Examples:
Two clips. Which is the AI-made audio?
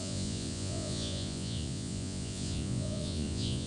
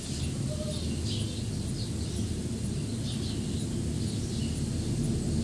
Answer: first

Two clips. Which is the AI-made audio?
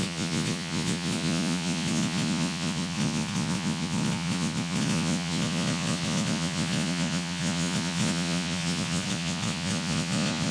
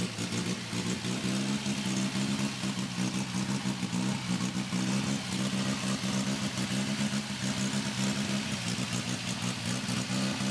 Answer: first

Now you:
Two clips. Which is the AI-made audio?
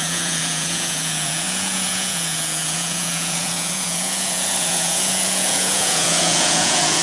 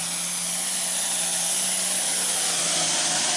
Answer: first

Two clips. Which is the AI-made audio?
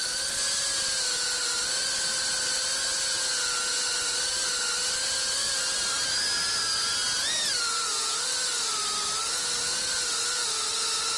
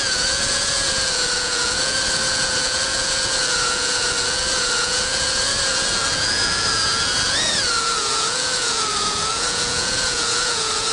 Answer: second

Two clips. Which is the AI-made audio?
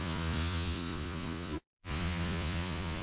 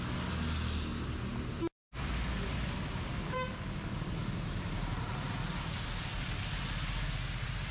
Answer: first